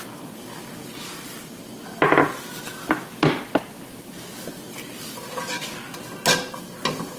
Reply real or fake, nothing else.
real